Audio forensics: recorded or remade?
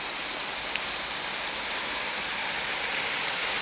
recorded